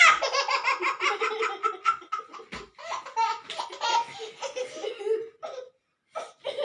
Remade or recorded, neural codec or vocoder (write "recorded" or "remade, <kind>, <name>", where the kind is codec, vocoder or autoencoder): recorded